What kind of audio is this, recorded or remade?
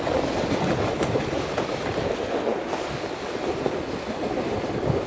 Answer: recorded